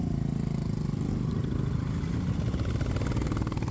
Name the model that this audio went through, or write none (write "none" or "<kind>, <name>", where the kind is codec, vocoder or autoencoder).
none